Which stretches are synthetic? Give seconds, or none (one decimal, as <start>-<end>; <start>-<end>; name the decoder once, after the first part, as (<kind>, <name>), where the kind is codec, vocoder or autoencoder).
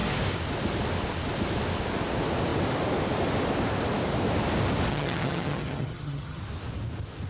4.9-6.4 (vocoder, HiFi-GAN)